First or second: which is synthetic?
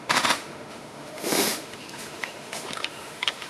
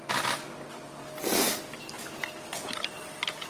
first